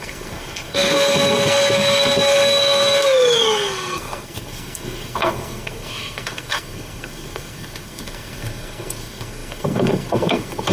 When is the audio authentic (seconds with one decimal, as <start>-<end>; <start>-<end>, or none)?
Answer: none